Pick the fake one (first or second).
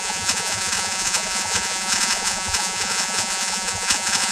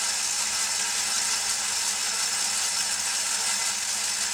first